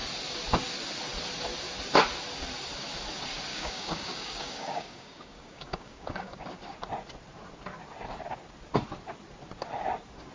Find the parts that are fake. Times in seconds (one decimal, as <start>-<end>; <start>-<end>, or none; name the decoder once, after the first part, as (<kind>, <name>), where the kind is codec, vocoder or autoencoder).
3.5-6.4 (codec, DAC)